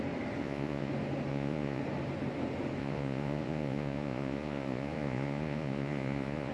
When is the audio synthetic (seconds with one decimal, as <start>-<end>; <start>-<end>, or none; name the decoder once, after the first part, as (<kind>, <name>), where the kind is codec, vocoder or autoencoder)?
0.4-0.9 (vocoder, Vocos); 1.3-1.8; 2.8-6.5